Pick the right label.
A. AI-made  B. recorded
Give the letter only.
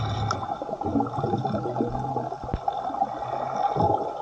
B